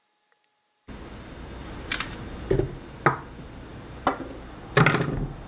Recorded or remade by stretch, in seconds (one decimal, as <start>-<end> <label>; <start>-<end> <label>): 0.0-1.6 recorded; 1.6-2.5 remade; 2.5-3.7 recorded; 3.7-4.6 remade; 4.6-5.5 recorded